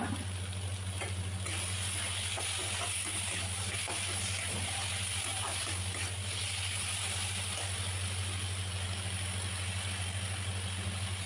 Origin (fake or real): real